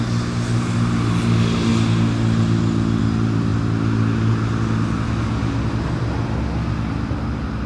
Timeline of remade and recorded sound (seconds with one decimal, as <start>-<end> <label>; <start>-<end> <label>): 0.0-7.7 recorded